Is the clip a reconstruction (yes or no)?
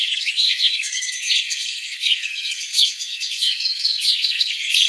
yes